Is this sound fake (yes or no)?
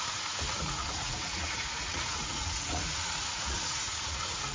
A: yes